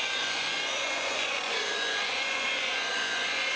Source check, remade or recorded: remade